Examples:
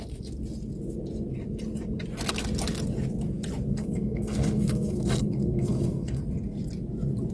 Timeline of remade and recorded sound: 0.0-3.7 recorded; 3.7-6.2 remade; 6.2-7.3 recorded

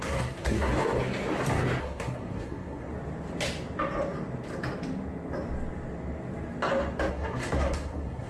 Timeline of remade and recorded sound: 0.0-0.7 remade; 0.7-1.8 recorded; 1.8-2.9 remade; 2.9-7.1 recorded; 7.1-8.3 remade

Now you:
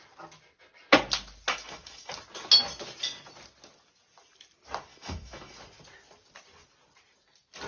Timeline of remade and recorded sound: 0.0-1.5 recorded; 1.5-2.1 remade; 2.1-4.9 recorded; 4.9-5.6 remade; 5.6-7.7 recorded

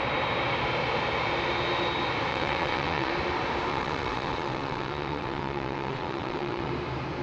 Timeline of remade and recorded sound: 0.0-2.3 recorded; 2.3-3.1 remade; 3.1-3.7 recorded; 3.7-6.7 remade; 6.7-7.2 recorded